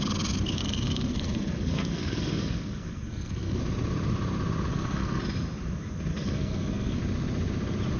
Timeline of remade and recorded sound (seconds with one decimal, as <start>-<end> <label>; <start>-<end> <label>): 0.0-0.6 recorded; 0.6-3.6 remade; 3.6-4.7 recorded; 4.7-5.2 remade; 5.2-6.1 recorded; 6.1-7.0 remade; 7.0-8.0 recorded